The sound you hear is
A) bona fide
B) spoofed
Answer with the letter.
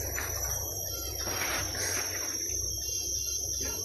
A